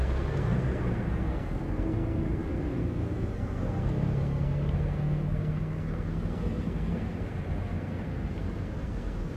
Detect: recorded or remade remade